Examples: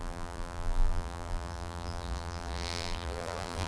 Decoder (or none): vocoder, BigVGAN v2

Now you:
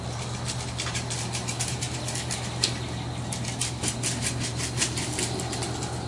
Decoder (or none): none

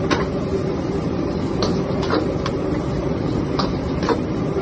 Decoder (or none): vocoder, BigVGAN v2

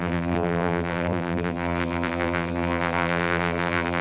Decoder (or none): vocoder, BigVGAN v2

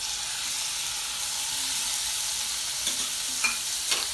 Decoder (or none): none